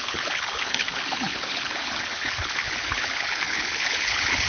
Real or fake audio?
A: fake